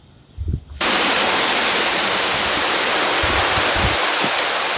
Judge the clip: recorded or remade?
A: recorded